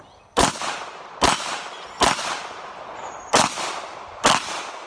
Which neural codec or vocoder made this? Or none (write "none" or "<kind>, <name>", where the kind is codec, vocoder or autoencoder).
none